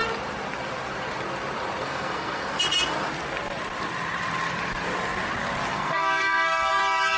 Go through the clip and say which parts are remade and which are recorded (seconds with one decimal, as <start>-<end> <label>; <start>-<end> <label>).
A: 0.0-1.8 recorded; 1.8-2.5 remade; 2.5-5.7 recorded; 5.7-6.7 remade; 6.7-7.2 recorded